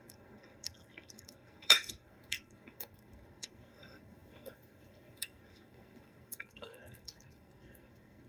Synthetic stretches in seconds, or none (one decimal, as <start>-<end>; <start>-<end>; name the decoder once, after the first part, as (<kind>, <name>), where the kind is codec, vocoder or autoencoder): 0.0-8.3 (codec, SNAC)